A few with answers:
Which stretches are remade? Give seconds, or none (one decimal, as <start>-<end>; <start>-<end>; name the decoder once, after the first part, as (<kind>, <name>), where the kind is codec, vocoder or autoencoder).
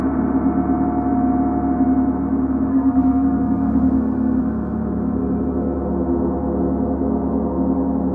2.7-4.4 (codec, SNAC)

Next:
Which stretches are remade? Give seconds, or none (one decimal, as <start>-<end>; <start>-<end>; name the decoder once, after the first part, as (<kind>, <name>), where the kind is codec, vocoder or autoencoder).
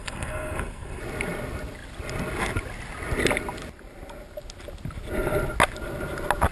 0.0-1.0 (codec, SNAC)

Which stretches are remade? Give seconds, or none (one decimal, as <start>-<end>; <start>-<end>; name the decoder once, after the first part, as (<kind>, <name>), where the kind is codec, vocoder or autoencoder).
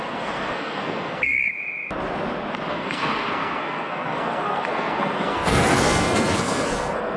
0.0-1.5 (codec, SNAC); 2.7-7.2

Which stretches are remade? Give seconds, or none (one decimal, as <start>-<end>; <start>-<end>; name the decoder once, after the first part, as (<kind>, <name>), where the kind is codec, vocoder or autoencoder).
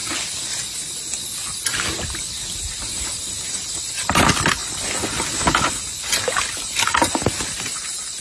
none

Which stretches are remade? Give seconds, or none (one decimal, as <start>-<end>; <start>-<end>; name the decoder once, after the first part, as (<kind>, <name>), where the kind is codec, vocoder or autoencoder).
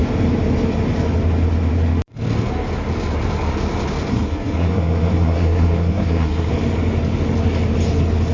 4.1-6.5 (codec, SNAC)